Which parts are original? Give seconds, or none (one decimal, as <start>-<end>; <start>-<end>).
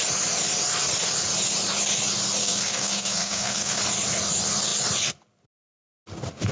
0.0-2.4; 3.8-6.5